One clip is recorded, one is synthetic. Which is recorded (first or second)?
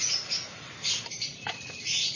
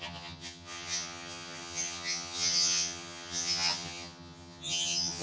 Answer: first